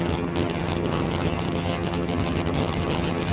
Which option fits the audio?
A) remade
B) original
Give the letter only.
A